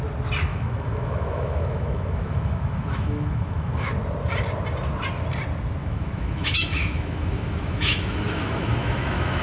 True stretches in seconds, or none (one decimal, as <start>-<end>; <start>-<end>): 0.0-0.5; 3.9-5.8